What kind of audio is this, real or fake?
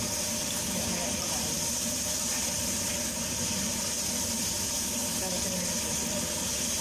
real